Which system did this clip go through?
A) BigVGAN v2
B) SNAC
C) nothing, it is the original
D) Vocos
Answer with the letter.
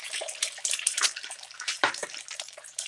A